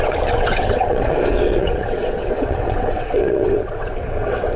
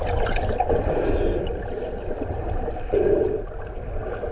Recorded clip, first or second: second